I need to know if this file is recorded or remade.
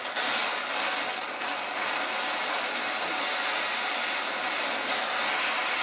recorded